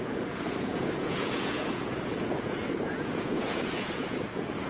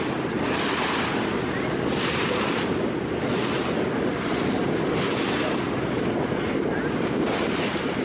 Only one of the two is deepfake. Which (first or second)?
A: first